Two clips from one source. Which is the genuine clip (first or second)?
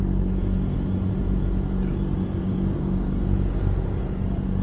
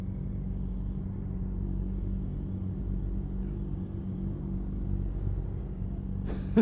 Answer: second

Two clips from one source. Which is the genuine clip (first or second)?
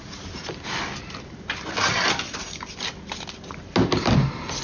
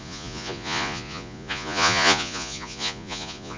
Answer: first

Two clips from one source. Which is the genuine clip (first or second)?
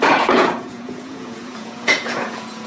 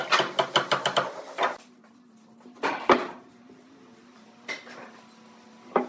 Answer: second